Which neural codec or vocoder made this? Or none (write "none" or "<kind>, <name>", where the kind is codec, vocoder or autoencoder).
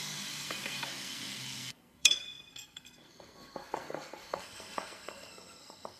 codec, SNAC